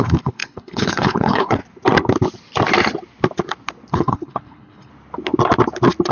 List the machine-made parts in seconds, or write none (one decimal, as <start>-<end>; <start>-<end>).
0.0-1.6; 3.9-4.9